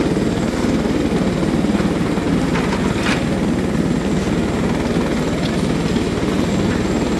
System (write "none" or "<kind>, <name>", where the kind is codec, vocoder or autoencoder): none